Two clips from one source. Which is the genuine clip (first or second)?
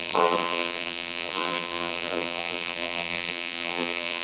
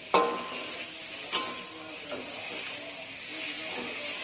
second